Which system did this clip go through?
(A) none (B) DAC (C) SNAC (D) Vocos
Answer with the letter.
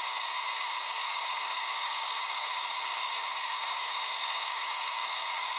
B